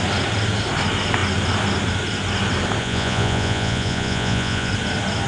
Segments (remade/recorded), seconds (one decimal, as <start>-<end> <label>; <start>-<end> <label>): 0.0-2.8 recorded; 2.8-4.7 remade; 4.7-5.3 recorded